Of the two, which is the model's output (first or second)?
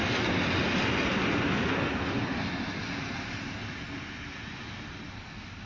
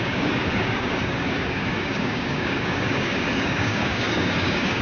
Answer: second